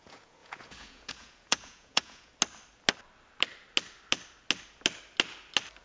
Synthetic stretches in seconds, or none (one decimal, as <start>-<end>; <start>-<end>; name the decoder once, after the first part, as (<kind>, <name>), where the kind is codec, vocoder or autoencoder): 0.0-2.3 (vocoder, Vocos)